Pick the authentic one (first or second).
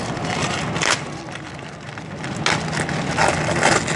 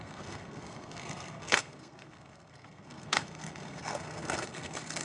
first